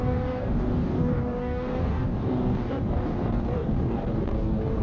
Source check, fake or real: fake